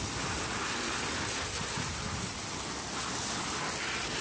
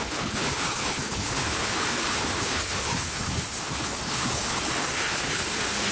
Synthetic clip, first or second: second